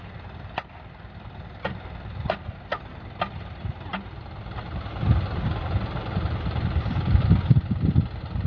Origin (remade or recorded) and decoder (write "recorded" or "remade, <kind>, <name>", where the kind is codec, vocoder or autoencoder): recorded